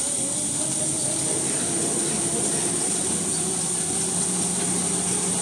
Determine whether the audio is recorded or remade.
recorded